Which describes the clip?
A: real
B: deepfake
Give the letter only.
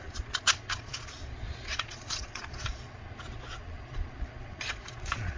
B